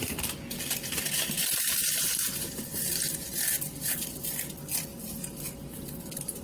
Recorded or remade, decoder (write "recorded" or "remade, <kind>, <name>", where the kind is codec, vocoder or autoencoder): recorded